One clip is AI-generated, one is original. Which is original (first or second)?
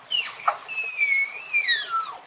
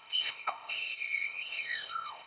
first